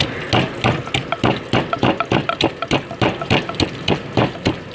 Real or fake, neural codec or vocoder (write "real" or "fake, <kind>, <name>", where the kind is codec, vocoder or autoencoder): real